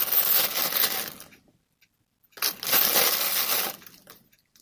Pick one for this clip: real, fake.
real